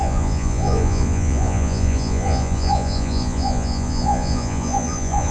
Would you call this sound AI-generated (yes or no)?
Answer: yes